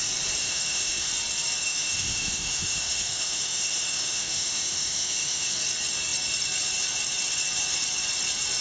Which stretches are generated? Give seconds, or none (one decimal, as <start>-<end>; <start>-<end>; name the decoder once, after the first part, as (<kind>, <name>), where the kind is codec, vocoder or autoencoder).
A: 0.4-1.1 (autoencoder, DAC-VAE); 1.6-5.6